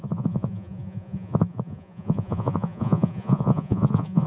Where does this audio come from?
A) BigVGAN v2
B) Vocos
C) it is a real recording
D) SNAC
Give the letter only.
B